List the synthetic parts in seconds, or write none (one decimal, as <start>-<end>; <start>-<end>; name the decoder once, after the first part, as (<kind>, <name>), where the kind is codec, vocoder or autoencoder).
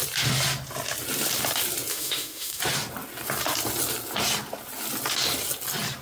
1.9-2.6 (autoencoder, DAC-VAE)